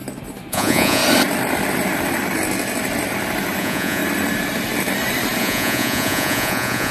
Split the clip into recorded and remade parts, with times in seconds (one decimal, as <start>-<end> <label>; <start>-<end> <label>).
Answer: 0.0-0.5 recorded; 0.5-1.0 remade; 1.0-3.6 recorded; 3.6-4.0 remade; 4.0-5.4 recorded; 5.4-6.9 remade